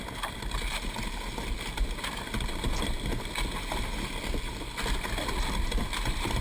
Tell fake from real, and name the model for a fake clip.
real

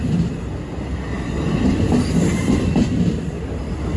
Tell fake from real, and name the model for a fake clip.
real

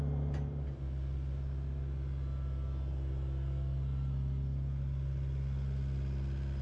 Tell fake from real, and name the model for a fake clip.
real